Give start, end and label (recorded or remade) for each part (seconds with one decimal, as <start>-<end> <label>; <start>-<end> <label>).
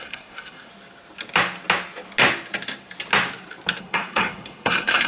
0.0-0.7 remade; 0.7-3.8 recorded; 3.8-5.1 remade